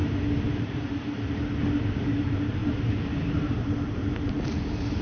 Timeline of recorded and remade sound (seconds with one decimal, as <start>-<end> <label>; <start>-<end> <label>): 0.0-2.6 recorded; 2.6-5.0 remade